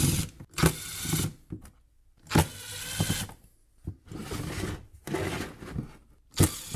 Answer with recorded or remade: recorded